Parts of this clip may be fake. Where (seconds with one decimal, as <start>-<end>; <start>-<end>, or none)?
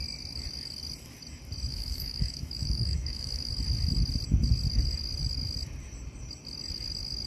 1.7-3.5